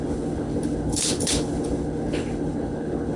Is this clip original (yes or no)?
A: no